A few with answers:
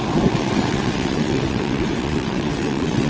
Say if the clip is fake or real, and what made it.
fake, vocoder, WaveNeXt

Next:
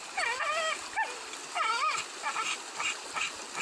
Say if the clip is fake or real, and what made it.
real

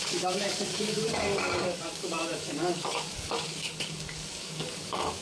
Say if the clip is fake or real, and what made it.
fake, codec, DAC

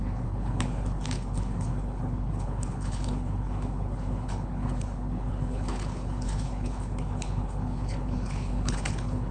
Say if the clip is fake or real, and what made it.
fake, codec, HILCodec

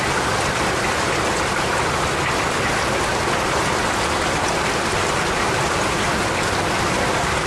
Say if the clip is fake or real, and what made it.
real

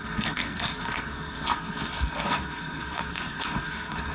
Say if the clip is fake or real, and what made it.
fake, codec, SNAC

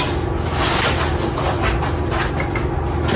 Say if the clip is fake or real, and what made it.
real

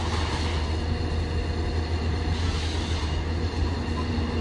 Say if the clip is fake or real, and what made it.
real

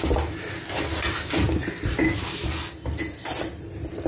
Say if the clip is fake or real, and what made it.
real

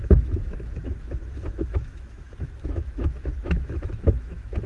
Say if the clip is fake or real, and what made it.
fake, autoencoder, DAC-VAE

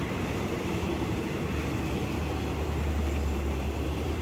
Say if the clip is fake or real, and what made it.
real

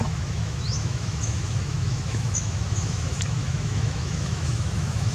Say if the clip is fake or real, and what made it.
fake, autoencoder, DAC-VAE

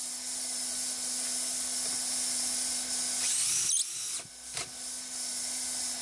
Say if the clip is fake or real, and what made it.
real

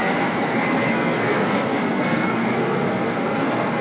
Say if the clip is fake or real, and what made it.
fake, codec, SNAC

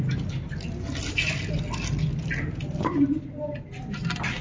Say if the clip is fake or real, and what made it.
real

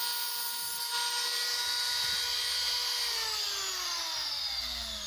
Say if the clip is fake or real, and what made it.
real